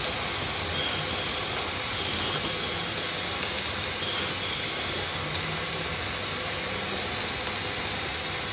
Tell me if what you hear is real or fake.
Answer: real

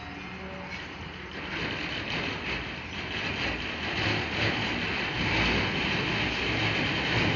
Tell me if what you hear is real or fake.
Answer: real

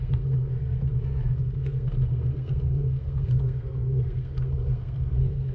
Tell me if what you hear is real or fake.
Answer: fake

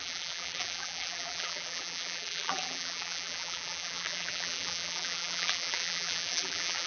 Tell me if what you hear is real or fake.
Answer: fake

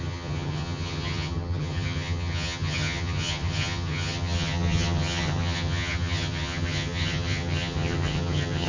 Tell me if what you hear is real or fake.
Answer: fake